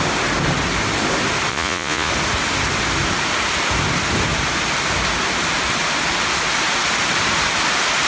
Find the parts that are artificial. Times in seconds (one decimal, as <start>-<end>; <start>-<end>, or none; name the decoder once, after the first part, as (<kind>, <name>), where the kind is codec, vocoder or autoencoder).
1.5-2.1 (vocoder, Vocos)